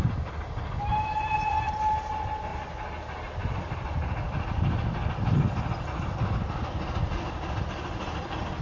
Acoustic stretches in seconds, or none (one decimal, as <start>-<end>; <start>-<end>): 0.0-8.6